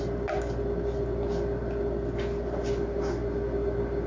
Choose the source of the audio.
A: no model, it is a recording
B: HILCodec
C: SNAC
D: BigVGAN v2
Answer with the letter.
A